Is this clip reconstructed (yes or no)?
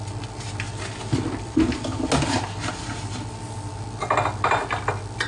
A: no